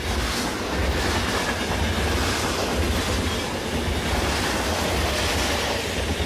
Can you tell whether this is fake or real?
real